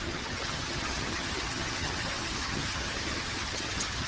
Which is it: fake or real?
fake